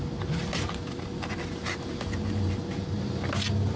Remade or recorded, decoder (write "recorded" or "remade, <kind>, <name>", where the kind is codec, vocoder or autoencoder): recorded